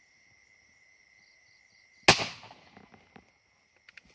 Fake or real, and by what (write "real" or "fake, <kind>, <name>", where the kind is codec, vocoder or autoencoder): real